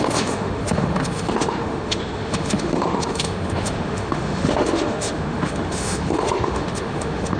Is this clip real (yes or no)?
no